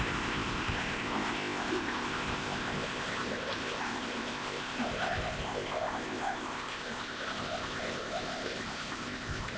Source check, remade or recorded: remade